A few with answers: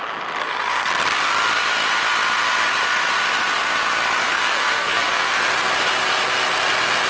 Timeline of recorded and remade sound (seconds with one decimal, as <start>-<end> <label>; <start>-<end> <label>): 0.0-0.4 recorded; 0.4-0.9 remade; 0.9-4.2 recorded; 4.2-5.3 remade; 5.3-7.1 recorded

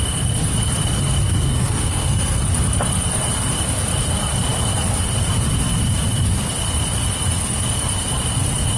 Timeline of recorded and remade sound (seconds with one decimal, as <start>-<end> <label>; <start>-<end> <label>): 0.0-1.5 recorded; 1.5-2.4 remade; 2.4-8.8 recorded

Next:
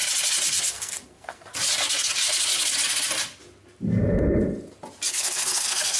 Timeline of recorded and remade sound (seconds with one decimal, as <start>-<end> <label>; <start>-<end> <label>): 0.0-0.7 recorded; 0.7-1.5 remade; 1.5-5.1 recorded; 5.1-6.0 remade

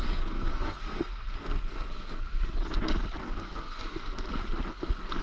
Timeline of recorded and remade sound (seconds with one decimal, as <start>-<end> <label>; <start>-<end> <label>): 0.0-2.4 remade; 2.4-3.2 recorded; 3.2-4.2 remade; 4.2-5.2 recorded